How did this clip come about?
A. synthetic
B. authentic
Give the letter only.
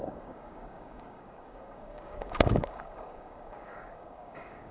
A